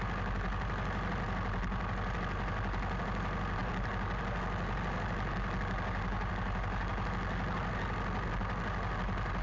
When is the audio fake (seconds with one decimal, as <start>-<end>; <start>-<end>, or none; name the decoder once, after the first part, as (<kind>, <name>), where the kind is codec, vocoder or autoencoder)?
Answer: none